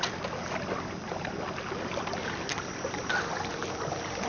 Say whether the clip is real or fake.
real